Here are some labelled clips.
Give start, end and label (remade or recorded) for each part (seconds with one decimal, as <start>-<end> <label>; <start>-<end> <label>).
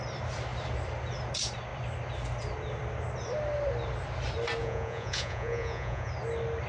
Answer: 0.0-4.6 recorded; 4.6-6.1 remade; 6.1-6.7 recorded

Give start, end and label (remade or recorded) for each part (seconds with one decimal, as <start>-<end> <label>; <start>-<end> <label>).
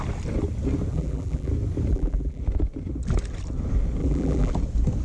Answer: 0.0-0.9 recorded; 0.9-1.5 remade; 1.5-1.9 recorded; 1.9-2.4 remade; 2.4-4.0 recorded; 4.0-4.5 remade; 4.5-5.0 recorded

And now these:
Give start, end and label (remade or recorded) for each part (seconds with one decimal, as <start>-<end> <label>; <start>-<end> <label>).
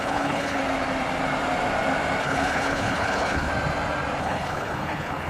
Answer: 0.0-0.6 remade; 0.6-2.2 recorded; 2.2-3.5 remade; 3.5-4.2 recorded; 4.2-5.3 remade